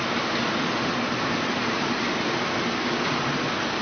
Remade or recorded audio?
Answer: recorded